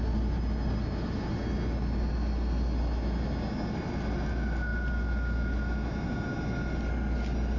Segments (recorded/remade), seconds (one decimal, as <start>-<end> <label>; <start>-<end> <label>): 0.0-7.6 recorded